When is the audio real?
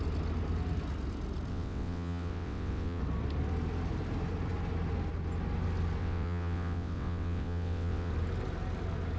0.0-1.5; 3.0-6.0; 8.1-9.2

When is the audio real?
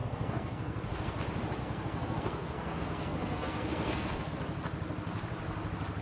1.2-1.6; 4.3-6.0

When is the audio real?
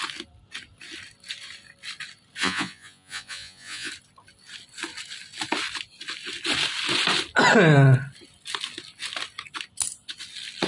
0.0-2.4; 3.9-10.7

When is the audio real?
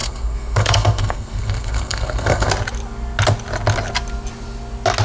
2.5-5.0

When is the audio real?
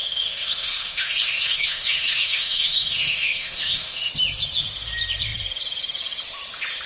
4.1-6.9